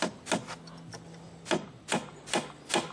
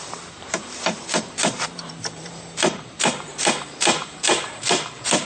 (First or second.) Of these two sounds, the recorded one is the first